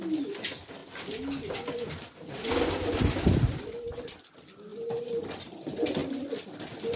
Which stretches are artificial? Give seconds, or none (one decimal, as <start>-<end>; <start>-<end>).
none

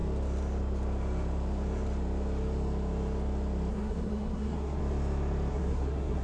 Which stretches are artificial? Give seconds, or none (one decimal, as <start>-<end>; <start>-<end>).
3.7-4.8; 5.5-6.2

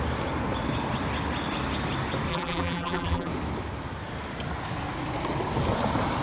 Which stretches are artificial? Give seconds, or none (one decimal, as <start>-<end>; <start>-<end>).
2.3-3.3

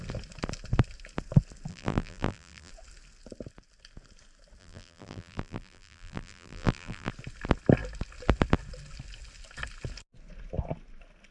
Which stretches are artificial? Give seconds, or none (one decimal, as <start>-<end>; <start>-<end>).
1.7-2.7; 4.6-7.1

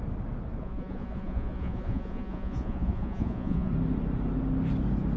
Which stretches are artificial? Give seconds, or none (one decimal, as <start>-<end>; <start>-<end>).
0.6-3.7

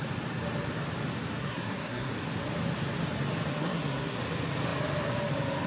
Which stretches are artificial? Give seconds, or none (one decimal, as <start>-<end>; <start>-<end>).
1.4-2.1; 3.5-4.2